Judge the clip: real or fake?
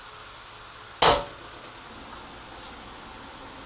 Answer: real